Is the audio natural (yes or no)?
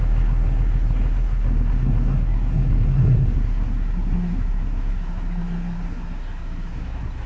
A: no